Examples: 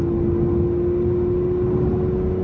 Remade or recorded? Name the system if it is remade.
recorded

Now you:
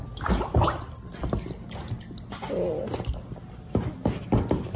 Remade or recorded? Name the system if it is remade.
recorded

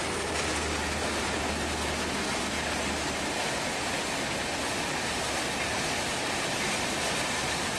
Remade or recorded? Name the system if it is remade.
recorded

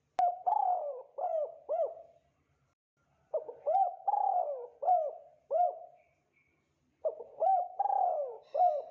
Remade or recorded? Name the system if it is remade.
remade, vocoder, BigVGAN v2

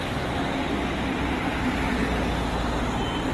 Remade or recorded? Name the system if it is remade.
recorded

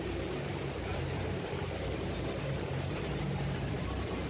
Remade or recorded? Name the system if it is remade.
remade, vocoder, BigVGAN v2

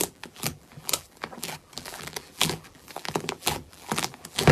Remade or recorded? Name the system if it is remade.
remade, vocoder, BigVGAN v2